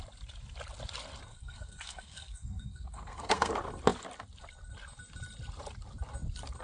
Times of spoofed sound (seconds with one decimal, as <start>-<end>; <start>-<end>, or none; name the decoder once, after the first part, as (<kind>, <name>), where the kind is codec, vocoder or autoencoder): 1.3-3.5 (codec, SNAC)

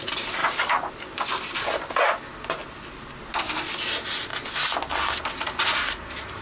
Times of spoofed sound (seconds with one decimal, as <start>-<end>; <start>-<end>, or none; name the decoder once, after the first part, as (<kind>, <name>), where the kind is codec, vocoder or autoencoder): 0.0-0.4 (vocoder, BigVGAN v2); 0.9-2.6; 3.7-4.3; 5.2-6.4

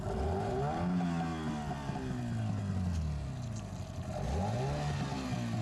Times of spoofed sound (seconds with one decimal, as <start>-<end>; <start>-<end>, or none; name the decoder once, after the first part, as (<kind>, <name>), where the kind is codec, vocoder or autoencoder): none